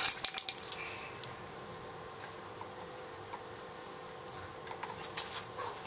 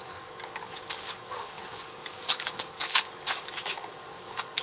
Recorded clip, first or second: first